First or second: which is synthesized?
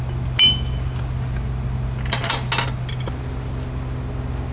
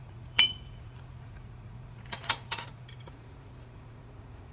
second